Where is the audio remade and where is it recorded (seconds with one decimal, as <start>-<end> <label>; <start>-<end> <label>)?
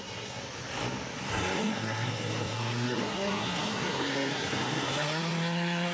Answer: 0.0-0.4 remade; 0.4-1.3 recorded; 1.3-5.9 remade